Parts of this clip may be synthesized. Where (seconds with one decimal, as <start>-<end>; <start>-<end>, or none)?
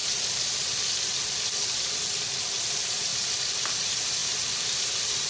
2.6-3.1; 3.7-5.3